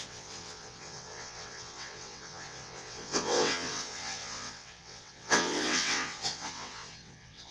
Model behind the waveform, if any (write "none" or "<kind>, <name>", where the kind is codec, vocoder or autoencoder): vocoder, WaveNeXt